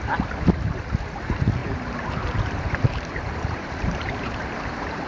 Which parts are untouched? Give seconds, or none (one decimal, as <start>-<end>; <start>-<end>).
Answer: 0.0-1.6